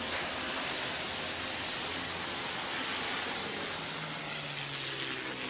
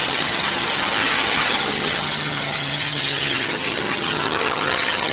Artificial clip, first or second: second